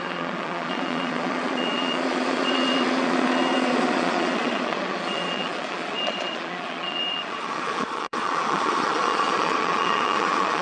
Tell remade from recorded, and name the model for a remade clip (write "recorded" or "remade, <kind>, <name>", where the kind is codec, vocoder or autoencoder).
remade, vocoder, Vocos